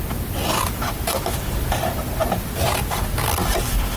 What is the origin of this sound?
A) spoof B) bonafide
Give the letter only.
B